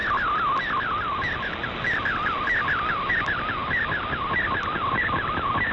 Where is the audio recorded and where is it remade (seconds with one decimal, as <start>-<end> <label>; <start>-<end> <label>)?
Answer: 0.0-5.7 recorded